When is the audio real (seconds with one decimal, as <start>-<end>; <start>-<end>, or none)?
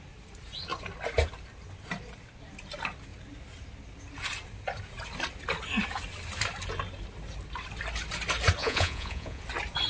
0.0-8.6; 9.4-9.9